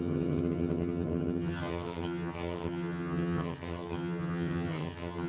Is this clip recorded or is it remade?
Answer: remade